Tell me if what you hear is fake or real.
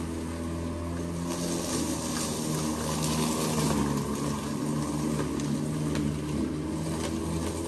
real